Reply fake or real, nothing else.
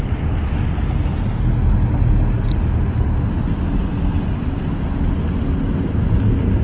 real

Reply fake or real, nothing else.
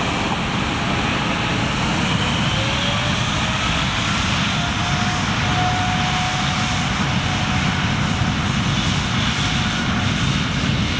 real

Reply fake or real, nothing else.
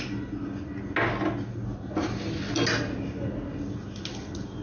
real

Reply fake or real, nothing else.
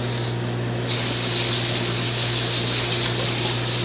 real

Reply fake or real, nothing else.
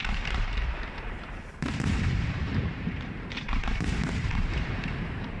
fake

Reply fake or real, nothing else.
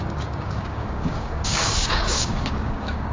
fake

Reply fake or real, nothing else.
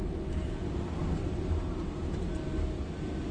real